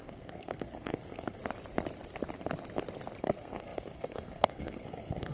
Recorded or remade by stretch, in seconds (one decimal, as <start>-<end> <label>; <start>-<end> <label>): 0.0-1.4 remade; 1.4-3.2 recorded; 3.2-5.3 remade